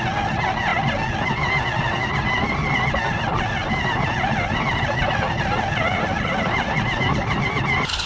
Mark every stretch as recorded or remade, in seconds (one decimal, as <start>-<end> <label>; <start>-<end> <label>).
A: 0.0-8.1 recorded

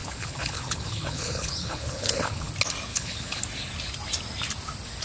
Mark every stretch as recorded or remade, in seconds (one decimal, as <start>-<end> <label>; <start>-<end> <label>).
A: 0.0-2.5 remade; 2.5-2.9 recorded; 2.9-3.4 remade; 3.4-5.0 recorded